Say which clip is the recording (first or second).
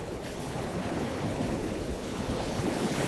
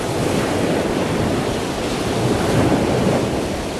second